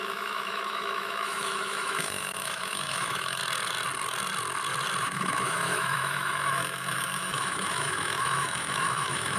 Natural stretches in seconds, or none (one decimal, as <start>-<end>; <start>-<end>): 3.4-5.0